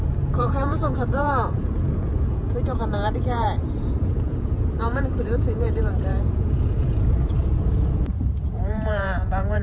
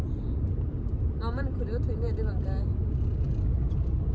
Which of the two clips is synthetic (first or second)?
first